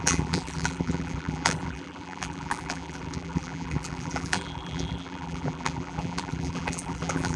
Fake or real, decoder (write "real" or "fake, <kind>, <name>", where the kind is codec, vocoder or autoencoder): fake, vocoder, BigVGAN v2